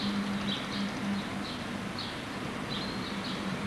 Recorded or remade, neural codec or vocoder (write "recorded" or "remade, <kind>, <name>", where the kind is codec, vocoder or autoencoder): recorded